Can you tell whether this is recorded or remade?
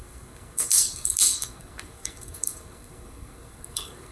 remade